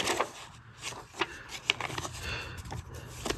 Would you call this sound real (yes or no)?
yes